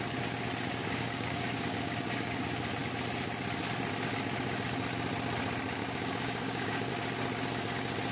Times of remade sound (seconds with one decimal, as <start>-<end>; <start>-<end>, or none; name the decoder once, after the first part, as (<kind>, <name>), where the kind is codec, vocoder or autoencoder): 0.7-2.4 (codec, DAC); 5.8-6.9